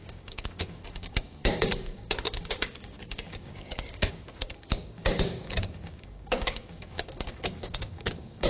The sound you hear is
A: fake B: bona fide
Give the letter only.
A